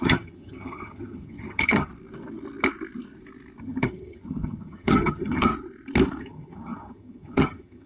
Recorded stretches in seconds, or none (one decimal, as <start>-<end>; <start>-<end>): 1.9-3.6; 5.5-6.2